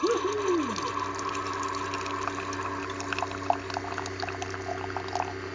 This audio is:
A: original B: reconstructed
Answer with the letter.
A